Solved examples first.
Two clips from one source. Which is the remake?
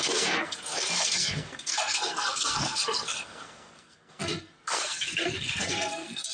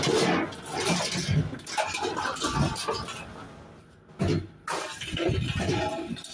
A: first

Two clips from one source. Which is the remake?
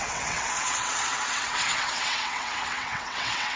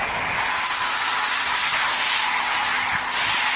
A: first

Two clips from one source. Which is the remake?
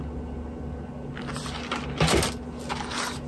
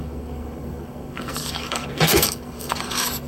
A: second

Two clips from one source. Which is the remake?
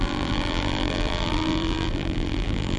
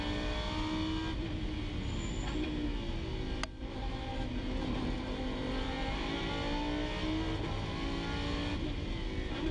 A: first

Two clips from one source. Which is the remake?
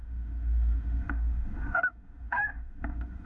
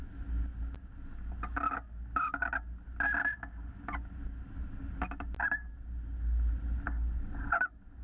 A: first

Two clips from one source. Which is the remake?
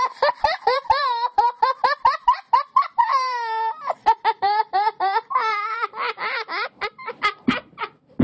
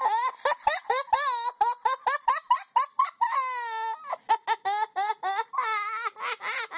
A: first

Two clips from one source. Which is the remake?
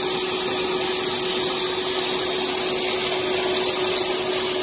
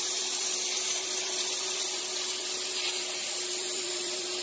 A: second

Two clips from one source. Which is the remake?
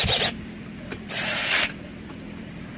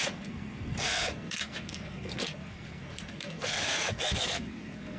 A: second